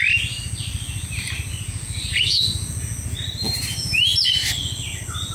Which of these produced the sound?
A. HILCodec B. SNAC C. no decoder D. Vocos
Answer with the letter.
C